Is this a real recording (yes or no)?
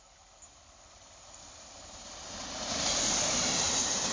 yes